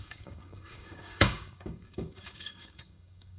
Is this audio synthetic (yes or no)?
yes